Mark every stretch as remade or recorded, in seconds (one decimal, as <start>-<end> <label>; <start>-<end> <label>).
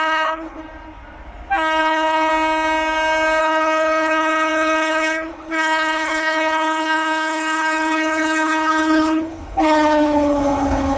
0.0-0.6 remade; 0.6-1.8 recorded; 1.8-2.3 remade; 2.3-3.4 recorded; 3.4-11.0 remade